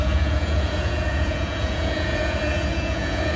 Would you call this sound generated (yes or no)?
yes